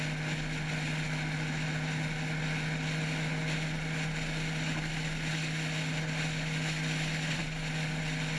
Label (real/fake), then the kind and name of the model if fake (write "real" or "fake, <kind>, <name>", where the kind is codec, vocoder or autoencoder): real